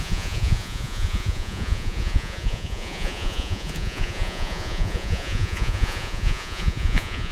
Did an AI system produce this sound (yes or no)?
yes